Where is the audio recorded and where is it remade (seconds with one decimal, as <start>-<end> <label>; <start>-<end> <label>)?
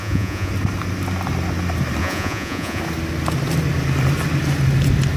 0.0-0.5 remade; 0.5-2.0 recorded; 2.0-2.8 remade; 2.8-5.2 recorded